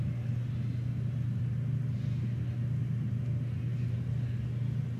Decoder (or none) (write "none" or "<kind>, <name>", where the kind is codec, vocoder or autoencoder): none